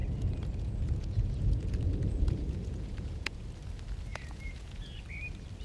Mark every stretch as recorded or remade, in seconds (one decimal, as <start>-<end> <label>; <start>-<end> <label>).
0.0-3.4 remade; 3.4-4.1 recorded; 4.1-5.0 remade; 5.0-5.6 recorded